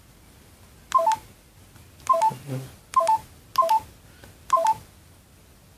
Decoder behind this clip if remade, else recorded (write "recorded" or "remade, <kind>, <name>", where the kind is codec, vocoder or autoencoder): recorded